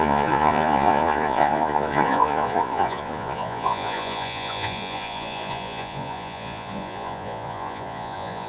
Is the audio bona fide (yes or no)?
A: no